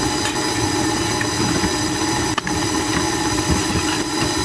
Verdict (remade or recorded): recorded